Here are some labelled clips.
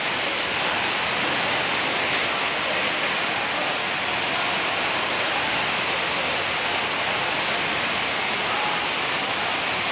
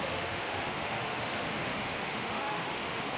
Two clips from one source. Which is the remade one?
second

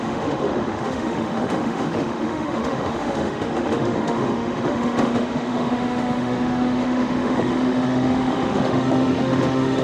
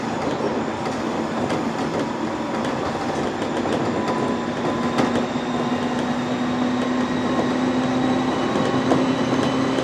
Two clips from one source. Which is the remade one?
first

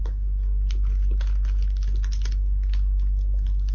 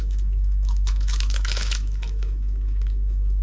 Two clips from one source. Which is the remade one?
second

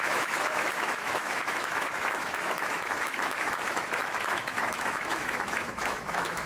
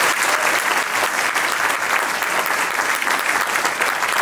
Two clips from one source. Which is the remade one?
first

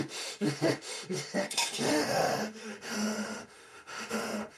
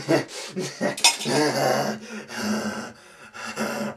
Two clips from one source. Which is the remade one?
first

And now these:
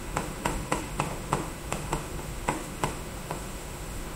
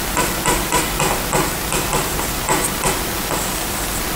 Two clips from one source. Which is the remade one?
first